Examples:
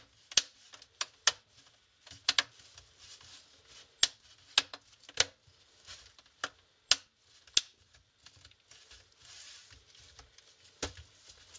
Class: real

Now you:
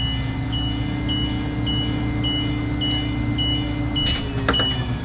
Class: real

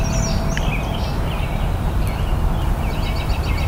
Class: real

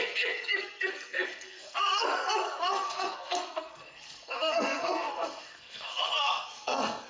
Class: fake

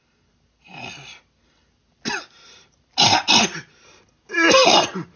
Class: real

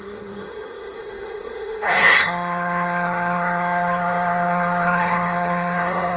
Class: fake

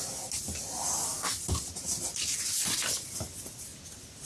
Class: real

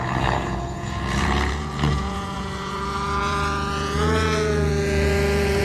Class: fake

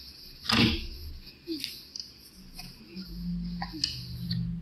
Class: real